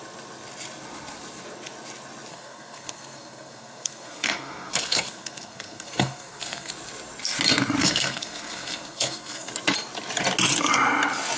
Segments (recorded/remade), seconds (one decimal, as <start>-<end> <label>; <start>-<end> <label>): 0.0-2.3 recorded; 2.3-6.7 remade; 6.7-7.8 recorded; 7.8-9.5 remade; 9.5-11.4 recorded